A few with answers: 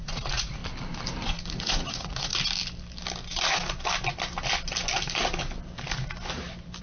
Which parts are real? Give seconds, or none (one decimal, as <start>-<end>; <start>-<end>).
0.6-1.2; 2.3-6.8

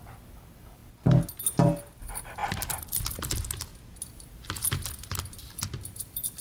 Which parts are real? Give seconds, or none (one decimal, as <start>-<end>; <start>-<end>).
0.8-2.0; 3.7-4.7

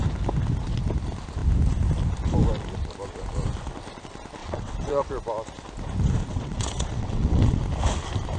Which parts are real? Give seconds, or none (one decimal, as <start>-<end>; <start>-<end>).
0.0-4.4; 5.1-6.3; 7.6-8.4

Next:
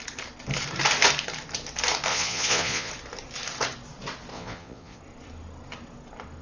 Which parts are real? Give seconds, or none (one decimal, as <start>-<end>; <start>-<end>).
0.0-2.1; 2.9-4.3; 5.0-6.4

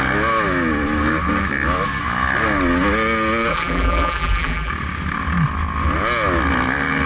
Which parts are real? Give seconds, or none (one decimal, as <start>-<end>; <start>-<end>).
0.0-3.5; 4.7-7.1

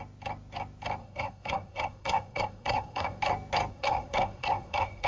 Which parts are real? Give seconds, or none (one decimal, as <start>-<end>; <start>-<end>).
0.0-1.0; 3.2-3.7

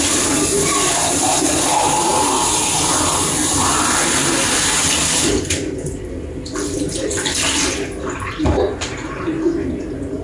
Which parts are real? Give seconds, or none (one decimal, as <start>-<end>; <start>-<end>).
0.0-10.2